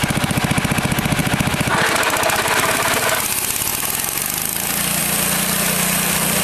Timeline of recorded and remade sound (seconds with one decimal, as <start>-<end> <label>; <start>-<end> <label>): 0.0-1.2 recorded; 1.2-3.0 remade; 3.0-6.4 recorded

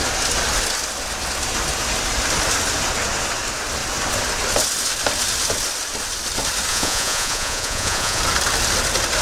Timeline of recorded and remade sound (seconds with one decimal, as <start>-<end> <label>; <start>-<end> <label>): 0.0-6.7 recorded; 6.7-8.2 remade; 8.2-9.2 recorded

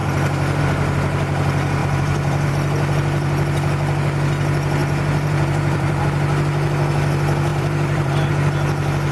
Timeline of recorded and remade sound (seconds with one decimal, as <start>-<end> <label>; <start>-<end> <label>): 0.0-1.8 recorded; 1.8-2.5 remade; 2.5-4.8 recorded; 4.8-6.0 remade; 6.0-7.5 recorded; 7.5-8.3 remade; 8.3-9.1 recorded

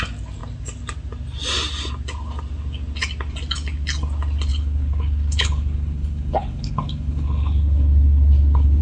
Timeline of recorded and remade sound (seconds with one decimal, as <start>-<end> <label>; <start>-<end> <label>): 0.0-4.5 recorded; 4.5-8.8 remade

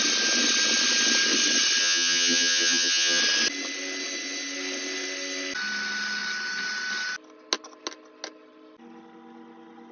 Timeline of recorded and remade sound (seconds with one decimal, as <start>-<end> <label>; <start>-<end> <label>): 0.0-1.8 recorded; 1.8-3.2 remade; 3.2-9.9 recorded

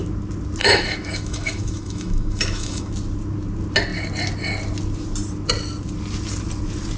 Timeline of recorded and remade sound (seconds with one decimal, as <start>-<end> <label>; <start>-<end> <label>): 0.0-0.6 recorded; 0.6-2.9 remade; 2.9-7.0 recorded

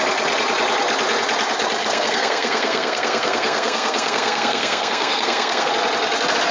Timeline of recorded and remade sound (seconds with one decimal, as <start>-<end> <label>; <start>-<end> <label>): 0.0-1.8 recorded; 1.8-5.7 remade; 5.7-6.5 recorded